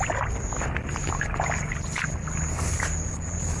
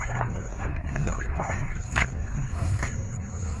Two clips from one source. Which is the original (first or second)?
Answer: first